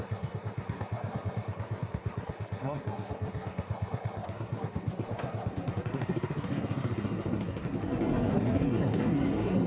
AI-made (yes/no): yes